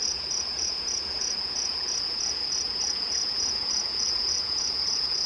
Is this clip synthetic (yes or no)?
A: yes